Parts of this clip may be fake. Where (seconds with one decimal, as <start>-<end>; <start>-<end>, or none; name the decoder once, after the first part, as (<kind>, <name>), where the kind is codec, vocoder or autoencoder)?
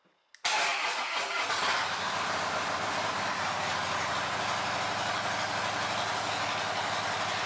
none